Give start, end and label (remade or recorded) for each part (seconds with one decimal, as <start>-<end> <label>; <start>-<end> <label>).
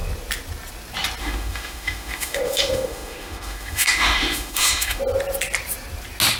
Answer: 0.0-1.2 recorded; 1.2-5.0 remade; 5.0-6.4 recorded